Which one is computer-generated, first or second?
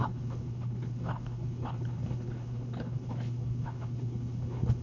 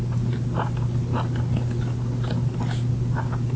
first